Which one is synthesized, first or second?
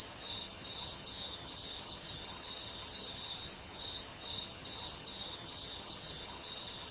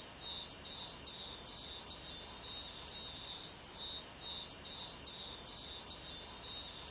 first